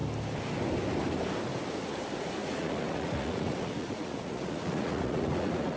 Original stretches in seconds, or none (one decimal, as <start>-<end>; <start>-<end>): 0.0-2.4